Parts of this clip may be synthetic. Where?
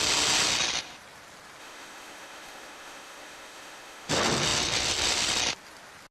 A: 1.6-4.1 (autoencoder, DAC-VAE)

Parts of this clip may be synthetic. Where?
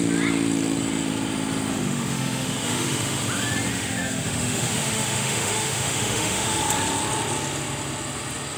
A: 1.7-3.2 (autoencoder, DAC-VAE); 3.7-6.6